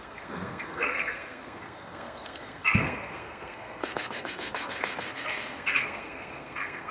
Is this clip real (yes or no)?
no